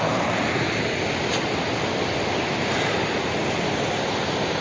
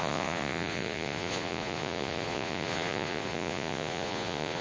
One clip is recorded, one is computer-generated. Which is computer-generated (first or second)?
second